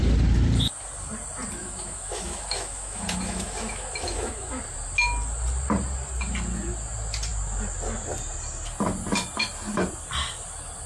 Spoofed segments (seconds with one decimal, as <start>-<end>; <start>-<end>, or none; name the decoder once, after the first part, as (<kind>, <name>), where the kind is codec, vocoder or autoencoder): 1.6-4.6 (autoencoder, DAC-VAE)